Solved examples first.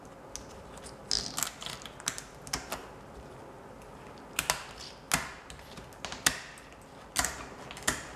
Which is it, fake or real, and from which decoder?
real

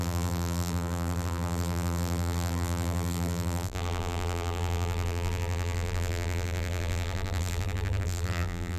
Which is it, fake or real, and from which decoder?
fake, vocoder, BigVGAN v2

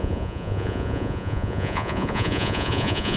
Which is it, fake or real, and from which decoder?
fake, vocoder, Vocos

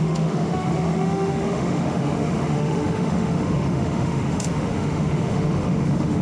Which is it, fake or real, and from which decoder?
fake, autoencoder, DAC-VAE